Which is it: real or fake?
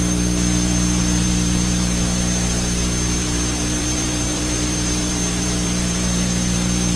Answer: fake